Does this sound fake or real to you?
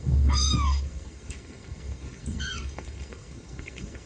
fake